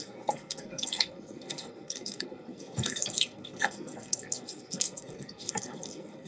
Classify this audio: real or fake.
fake